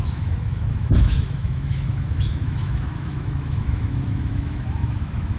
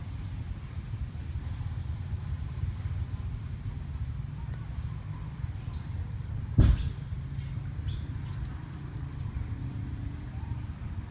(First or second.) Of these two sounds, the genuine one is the second